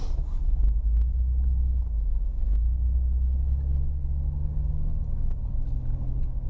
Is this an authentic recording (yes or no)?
yes